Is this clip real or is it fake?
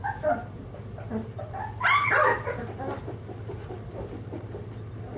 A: real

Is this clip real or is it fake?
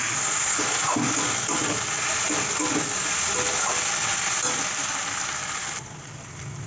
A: real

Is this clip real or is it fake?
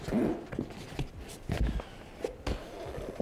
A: real